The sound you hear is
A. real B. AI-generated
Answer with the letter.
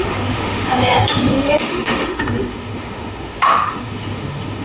B